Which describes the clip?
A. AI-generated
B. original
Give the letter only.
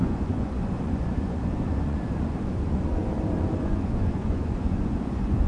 A